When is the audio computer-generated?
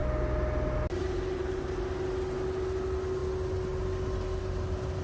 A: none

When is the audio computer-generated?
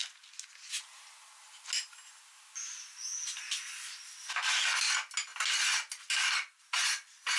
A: none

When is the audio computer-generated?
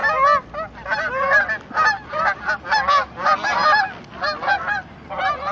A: none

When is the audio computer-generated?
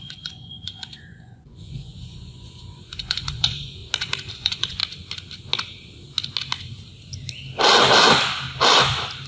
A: 0.0-3.8; 4.3-4.8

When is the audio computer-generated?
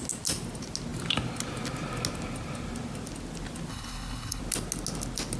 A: 3.7-4.4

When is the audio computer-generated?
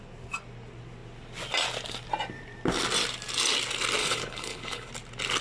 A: 4.0-4.9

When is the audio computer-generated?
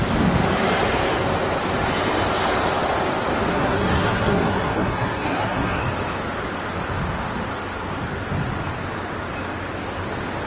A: 3.5-5.8